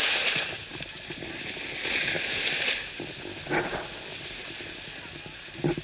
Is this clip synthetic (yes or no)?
no